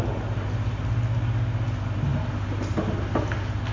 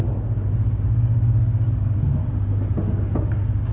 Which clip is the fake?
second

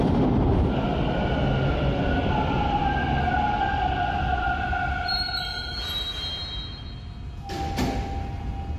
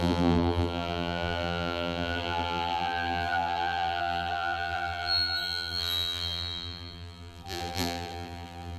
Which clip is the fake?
second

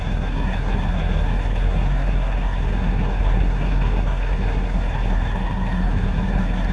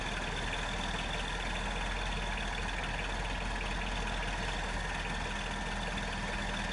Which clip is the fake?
first